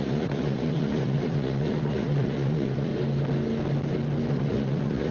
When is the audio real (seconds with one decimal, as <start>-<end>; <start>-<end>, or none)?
2.9-4.3